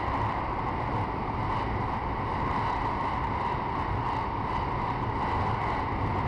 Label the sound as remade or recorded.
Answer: recorded